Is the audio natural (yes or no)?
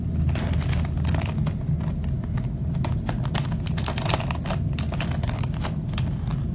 yes